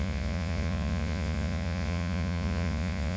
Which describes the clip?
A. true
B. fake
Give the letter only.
B